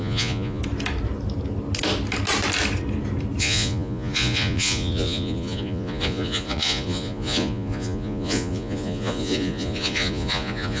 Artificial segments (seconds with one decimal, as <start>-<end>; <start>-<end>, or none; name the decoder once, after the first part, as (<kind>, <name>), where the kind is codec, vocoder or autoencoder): 0.0-0.6 (vocoder, Vocos); 3.4-10.8